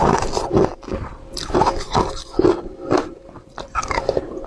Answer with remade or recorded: remade